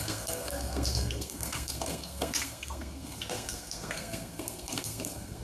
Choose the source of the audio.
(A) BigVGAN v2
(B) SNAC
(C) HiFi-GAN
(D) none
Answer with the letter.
B